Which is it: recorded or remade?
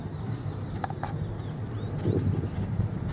recorded